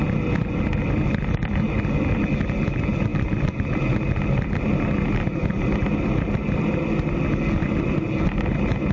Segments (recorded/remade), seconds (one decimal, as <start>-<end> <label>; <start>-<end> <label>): 0.0-8.9 recorded